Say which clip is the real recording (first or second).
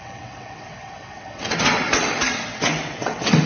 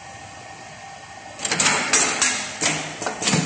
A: second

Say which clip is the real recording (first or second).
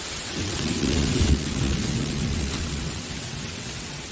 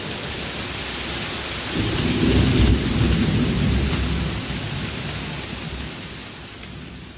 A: second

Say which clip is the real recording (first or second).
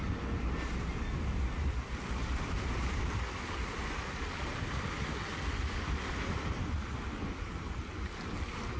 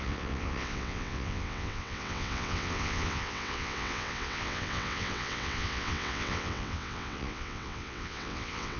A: first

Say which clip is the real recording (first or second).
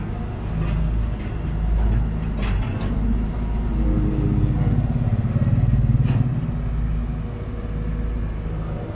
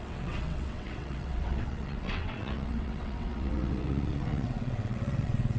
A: first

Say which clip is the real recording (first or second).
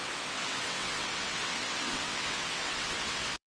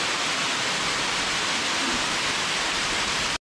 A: second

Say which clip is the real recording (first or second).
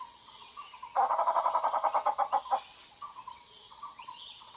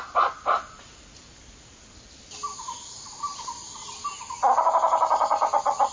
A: second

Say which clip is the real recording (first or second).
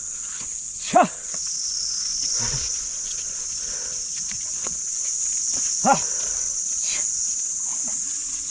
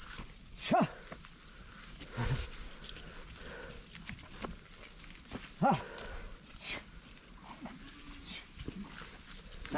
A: second